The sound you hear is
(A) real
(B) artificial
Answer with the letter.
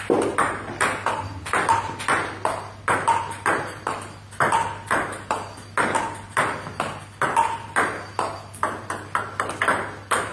A